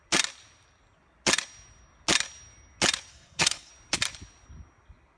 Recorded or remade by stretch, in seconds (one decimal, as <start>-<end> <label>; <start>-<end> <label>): 0.0-3.1 recorded; 3.1-3.7 remade; 3.7-5.2 recorded